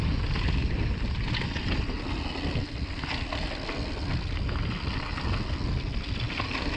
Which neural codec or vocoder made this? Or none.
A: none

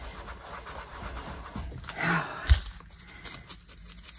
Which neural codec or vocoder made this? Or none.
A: none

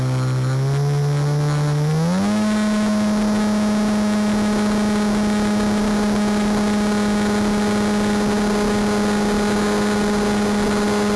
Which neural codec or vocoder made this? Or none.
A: none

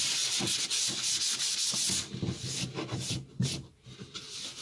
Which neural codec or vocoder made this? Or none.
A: none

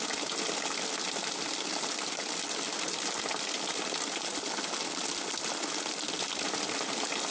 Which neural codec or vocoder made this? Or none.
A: none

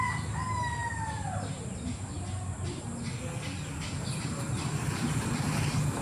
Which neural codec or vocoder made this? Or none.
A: none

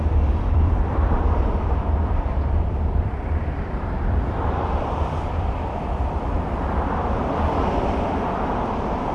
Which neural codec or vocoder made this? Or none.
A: vocoder, BigVGAN v2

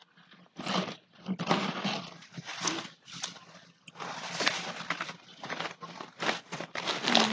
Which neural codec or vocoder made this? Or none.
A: none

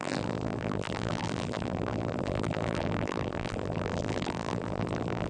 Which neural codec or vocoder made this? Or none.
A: vocoder, BigVGAN v2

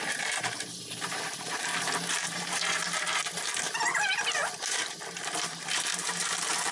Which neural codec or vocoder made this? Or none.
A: vocoder, BigVGAN v2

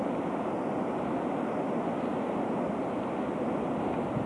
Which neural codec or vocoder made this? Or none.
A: none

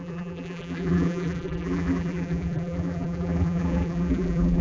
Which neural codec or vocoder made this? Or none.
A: vocoder, BigVGAN v2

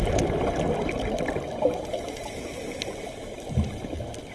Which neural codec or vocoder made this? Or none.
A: none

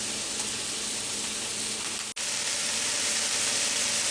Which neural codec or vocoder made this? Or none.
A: none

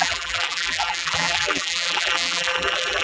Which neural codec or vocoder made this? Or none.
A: vocoder, BigVGAN v2